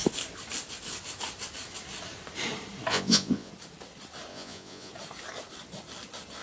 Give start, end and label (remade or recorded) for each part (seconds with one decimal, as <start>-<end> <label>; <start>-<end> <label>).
0.0-2.9 recorded; 2.9-3.5 remade; 3.5-4.3 recorded; 4.3-4.9 remade; 4.9-6.4 recorded

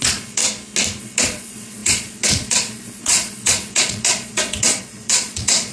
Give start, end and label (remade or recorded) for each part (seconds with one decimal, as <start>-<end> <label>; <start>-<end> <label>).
0.0-0.4 remade; 0.4-1.0 recorded; 1.0-5.7 remade

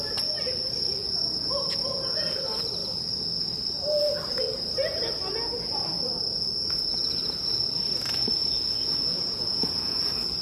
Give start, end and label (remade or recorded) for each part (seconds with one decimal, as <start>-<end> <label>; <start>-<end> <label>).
0.0-1.0 recorded; 1.0-1.6 remade; 1.6-8.4 recorded; 8.4-10.0 remade; 10.0-10.4 recorded

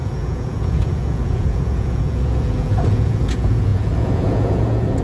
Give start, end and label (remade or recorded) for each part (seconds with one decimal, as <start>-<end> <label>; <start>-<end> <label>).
0.0-5.0 remade